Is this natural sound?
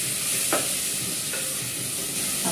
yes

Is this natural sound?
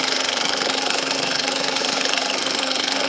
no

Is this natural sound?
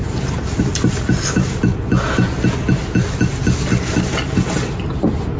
yes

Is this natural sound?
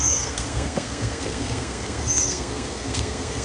no